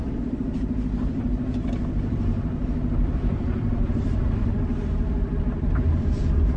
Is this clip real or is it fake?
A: fake